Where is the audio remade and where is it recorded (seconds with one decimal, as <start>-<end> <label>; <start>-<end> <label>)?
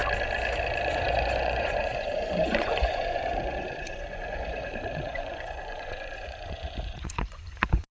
0.0-0.9 recorded; 0.9-7.9 remade